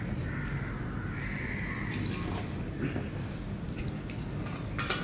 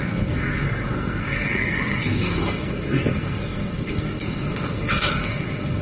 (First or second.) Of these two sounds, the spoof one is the second